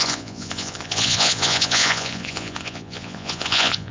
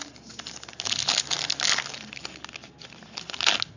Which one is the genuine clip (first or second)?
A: second